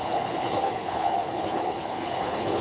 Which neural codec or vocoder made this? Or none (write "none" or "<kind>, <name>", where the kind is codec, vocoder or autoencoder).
codec, HILCodec